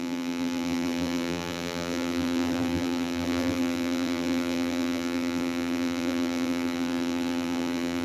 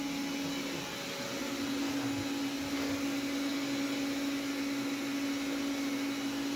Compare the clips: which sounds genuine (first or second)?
second